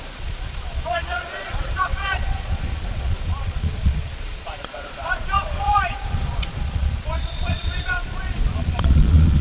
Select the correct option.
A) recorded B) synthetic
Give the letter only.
B